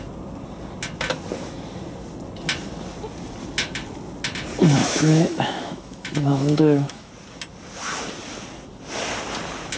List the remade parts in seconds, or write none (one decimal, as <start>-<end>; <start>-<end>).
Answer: 4.8-7.1